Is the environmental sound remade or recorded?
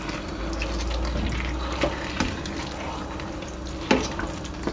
recorded